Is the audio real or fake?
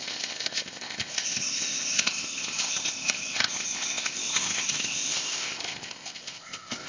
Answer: fake